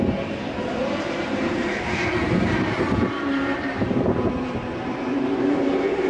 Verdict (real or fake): fake